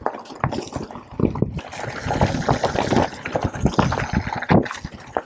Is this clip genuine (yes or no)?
yes